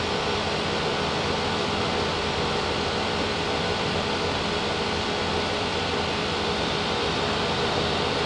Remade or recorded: remade